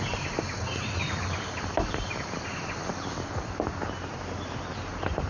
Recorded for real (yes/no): yes